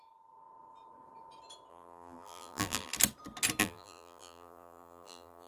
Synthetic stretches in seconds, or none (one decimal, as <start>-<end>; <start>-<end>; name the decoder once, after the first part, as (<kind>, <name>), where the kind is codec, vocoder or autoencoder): 1.7-2.9 (vocoder, BigVGAN v2); 3.6-5.5